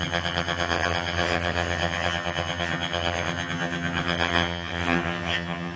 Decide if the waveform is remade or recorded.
remade